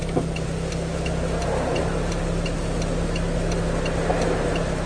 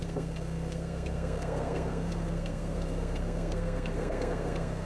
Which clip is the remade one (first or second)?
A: second